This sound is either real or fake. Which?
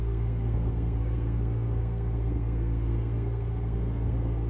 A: fake